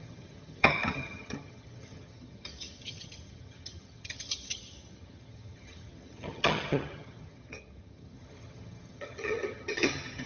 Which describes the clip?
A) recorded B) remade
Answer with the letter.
B